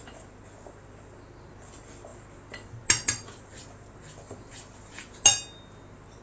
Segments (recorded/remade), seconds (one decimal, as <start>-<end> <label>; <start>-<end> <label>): 0.0-6.2 recorded